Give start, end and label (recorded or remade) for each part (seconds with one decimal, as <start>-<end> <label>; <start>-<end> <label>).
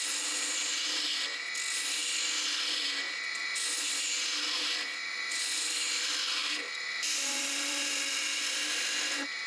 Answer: 0.0-6.4 recorded; 6.4-7.8 remade; 7.8-9.5 recorded